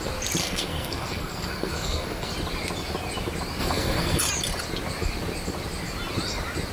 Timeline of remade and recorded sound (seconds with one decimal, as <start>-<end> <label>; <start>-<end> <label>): 0.0-0.4 recorded; 0.4-2.3 remade; 2.3-3.6 recorded; 3.6-4.2 remade; 4.2-6.7 recorded